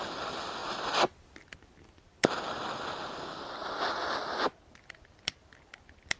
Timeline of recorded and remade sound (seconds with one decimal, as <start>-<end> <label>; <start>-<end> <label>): 0.0-6.2 recorded